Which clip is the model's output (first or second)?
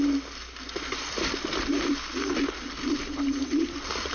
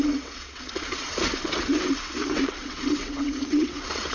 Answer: second